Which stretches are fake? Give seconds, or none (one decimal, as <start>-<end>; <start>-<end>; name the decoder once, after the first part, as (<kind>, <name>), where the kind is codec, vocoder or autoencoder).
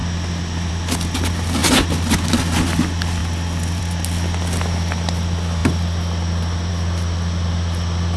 none